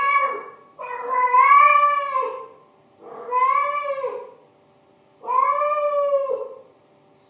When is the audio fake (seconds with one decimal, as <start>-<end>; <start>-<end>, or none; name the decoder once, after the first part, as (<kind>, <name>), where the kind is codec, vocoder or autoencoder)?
none